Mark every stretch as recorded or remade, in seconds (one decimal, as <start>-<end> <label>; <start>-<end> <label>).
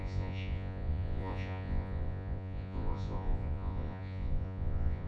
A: 0.0-5.1 remade